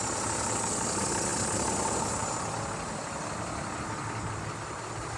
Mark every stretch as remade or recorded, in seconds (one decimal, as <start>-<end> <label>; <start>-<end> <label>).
0.0-5.2 recorded

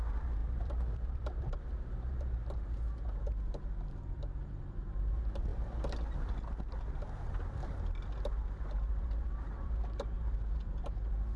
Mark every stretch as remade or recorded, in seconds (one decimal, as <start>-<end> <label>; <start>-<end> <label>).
0.0-5.5 remade; 5.5-8.9 recorded; 8.9-11.4 remade

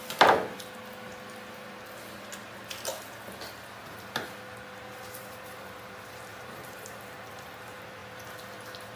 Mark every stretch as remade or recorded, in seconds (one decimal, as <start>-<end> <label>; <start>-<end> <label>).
0.0-4.8 recorded; 4.8-8.0 remade; 8.0-9.0 recorded

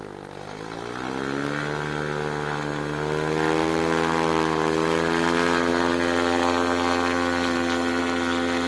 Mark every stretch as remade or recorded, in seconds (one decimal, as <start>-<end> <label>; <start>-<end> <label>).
0.0-8.7 recorded

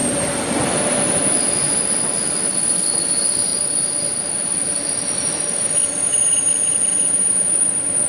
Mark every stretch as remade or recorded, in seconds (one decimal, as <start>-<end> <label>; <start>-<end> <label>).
0.0-1.2 remade; 1.2-6.9 recorded; 6.9-8.1 remade